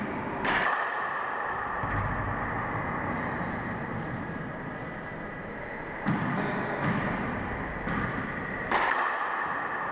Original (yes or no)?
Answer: yes